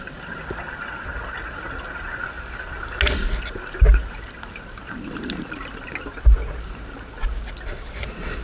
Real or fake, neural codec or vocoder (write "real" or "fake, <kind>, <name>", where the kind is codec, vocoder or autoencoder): real